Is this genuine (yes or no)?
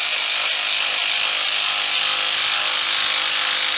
yes